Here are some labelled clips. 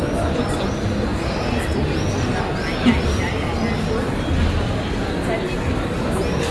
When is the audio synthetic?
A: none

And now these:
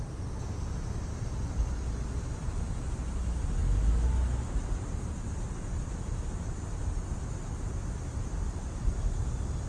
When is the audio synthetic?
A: none